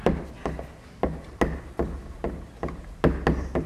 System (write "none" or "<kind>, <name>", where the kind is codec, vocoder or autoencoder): none